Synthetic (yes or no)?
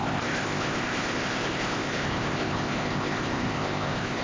yes